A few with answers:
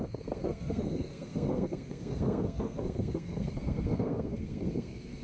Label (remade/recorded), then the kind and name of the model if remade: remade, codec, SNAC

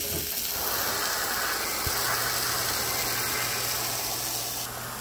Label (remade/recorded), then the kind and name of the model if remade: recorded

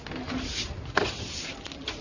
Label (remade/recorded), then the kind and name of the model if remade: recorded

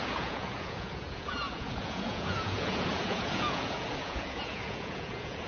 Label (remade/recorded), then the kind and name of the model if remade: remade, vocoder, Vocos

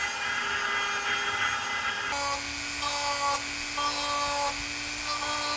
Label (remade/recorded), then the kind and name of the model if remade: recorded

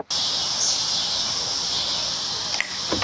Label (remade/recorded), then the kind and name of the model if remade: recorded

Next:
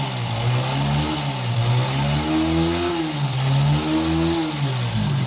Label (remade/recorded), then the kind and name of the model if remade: recorded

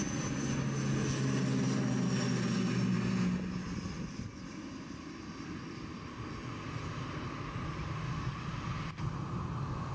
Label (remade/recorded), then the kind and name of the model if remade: recorded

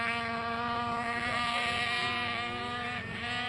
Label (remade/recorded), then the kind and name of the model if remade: recorded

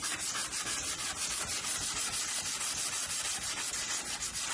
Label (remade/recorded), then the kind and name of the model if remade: recorded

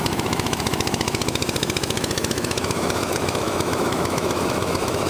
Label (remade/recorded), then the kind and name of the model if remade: remade, autoencoder, DAC-VAE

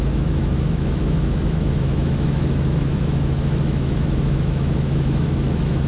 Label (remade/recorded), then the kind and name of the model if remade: remade, autoencoder, DAC-VAE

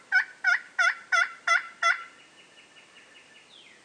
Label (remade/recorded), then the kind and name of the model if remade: recorded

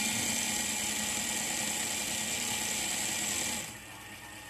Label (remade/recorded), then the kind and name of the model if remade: recorded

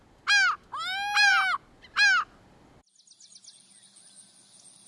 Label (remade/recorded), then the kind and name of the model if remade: recorded